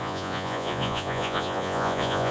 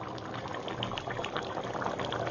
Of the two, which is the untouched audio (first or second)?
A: second